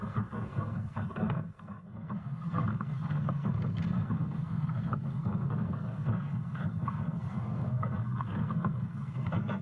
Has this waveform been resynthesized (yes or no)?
yes